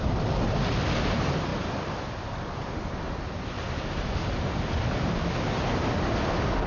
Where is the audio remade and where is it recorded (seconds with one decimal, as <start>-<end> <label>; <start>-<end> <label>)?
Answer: 0.0-6.7 recorded